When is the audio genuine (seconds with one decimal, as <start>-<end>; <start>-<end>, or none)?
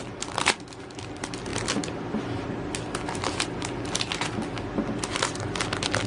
0.0-6.1